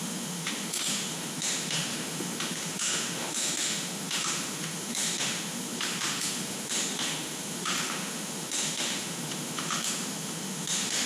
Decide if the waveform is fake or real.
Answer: fake